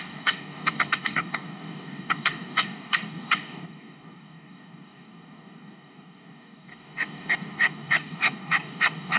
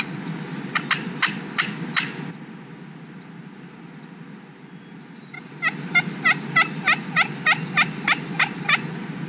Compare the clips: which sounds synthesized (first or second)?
first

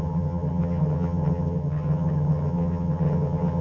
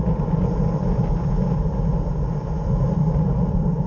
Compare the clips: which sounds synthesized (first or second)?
first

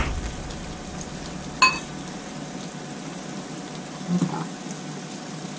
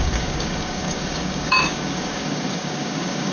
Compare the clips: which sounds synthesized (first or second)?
second